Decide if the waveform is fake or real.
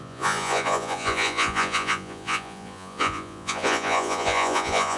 fake